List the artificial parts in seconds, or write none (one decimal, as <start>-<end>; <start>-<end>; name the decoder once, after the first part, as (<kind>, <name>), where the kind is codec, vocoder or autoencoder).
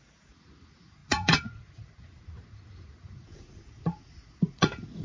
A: 0.0-5.0 (vocoder, Vocos)